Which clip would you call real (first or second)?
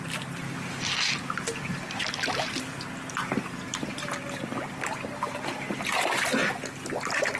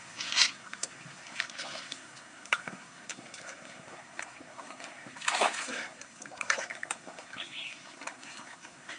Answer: first